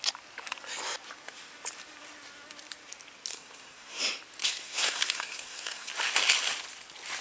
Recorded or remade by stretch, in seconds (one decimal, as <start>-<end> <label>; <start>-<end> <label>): 0.0-3.3 recorded; 3.3-4.0 remade; 4.0-4.4 recorded; 4.4-5.9 remade; 5.9-7.2 recorded